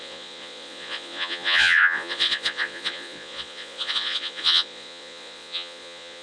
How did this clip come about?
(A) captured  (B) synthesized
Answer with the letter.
B